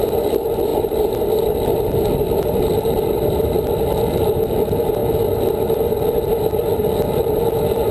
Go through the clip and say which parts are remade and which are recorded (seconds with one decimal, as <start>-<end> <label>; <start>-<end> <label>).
0.0-5.0 remade; 5.0-7.1 recorded; 7.1-7.9 remade